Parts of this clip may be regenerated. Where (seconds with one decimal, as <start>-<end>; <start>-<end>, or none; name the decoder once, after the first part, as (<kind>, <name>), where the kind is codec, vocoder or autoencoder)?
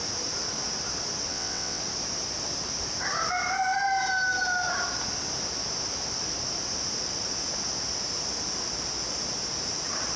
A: 1.3-1.8 (vocoder, WaveNeXt)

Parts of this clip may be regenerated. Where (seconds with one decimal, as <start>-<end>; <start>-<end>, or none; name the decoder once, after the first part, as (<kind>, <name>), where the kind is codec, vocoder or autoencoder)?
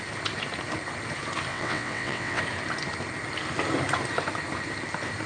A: 1.5-2.4 (vocoder, WaveNeXt)